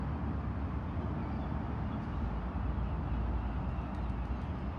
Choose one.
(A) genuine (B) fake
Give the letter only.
A